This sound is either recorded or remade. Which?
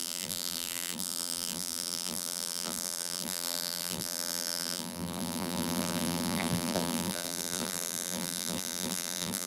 remade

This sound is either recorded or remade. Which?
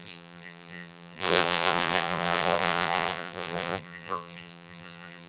remade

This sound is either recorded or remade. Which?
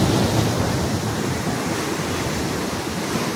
recorded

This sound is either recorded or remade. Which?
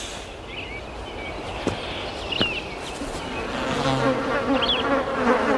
recorded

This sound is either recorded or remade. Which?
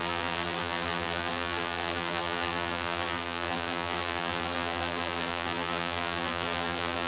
remade